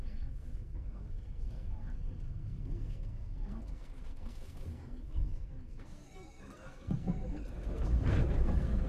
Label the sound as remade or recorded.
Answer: remade